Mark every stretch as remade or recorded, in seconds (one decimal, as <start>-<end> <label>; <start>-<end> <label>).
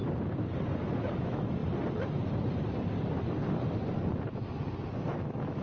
0.0-0.8 recorded; 0.8-1.6 remade; 1.6-5.0 recorded; 5.0-5.6 remade